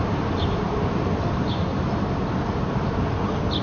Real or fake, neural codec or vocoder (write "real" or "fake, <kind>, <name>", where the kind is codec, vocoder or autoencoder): fake, vocoder, BigVGAN v2